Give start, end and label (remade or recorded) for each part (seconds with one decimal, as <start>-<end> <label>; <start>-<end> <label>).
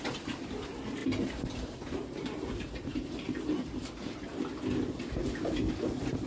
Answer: 0.0-2.9 recorded; 2.9-3.9 remade; 3.9-6.3 recorded